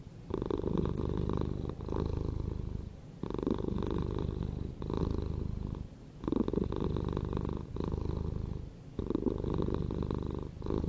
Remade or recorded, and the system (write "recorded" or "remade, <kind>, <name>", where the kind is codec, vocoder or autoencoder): recorded